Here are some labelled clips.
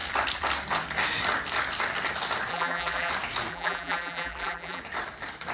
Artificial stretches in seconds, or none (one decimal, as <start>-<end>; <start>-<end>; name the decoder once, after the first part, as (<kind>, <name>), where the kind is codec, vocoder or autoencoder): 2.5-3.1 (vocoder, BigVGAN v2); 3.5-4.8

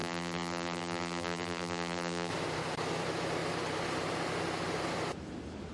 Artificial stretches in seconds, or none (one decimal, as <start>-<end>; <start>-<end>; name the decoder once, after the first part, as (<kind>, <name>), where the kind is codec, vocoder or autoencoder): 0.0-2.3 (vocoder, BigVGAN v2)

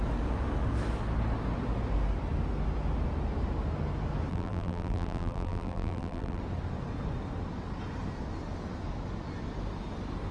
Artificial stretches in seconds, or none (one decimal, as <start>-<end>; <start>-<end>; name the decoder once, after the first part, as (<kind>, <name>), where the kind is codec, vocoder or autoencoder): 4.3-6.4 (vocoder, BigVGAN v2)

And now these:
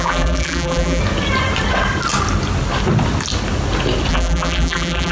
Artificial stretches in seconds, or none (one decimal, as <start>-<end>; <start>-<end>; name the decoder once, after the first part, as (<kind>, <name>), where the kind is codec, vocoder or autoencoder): 0.0-1.0 (vocoder, BigVGAN v2); 4.1-5.1

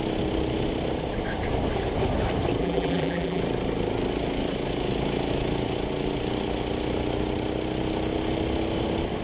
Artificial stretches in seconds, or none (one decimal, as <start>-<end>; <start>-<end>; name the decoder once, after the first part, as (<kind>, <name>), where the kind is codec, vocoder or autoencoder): 2.6-3.4 (vocoder, BigVGAN v2)